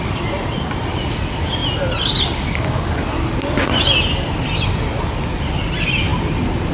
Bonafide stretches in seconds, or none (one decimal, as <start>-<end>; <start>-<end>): 0.0-6.7